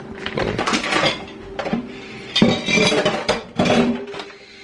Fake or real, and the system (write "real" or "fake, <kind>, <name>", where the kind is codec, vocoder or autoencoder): real